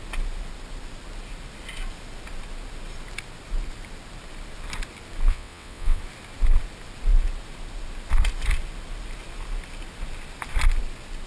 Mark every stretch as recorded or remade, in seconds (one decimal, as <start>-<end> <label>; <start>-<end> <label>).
0.0-5.3 recorded; 5.3-6.0 remade; 6.0-11.3 recorded